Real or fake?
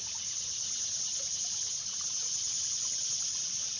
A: fake